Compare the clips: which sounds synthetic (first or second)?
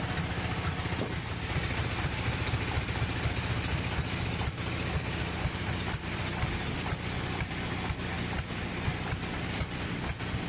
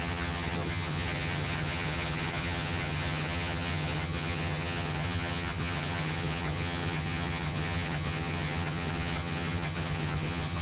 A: second